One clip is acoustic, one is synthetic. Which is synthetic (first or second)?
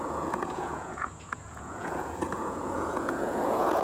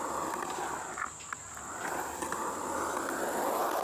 first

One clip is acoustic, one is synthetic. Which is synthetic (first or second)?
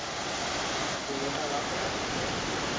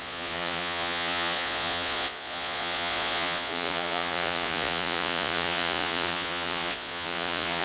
second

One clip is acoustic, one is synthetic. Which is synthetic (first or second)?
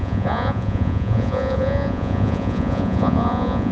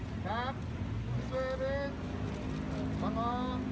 first